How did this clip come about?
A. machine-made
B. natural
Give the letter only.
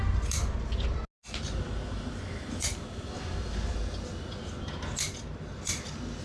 B